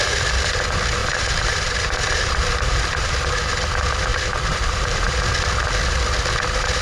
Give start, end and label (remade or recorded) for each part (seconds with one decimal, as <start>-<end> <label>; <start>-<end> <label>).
0.0-1.0 recorded; 1.0-3.5 remade; 3.5-4.1 recorded; 4.1-5.3 remade; 5.3-6.8 recorded